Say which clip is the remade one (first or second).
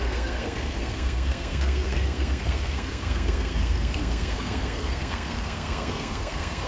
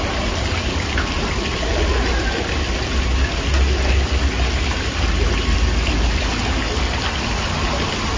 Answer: first